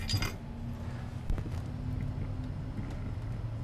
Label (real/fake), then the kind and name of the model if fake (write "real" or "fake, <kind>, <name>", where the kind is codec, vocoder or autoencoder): real